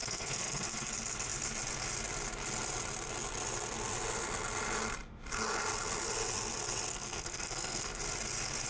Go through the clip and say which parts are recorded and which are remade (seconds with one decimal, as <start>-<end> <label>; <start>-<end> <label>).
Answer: 0.0-0.9 remade; 0.9-6.9 recorded; 6.9-8.0 remade; 8.0-8.7 recorded